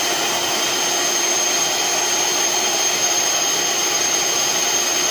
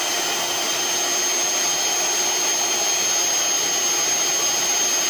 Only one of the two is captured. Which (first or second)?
second